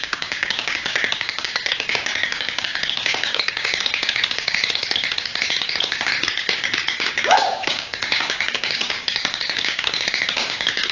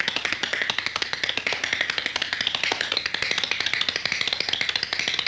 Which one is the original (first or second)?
second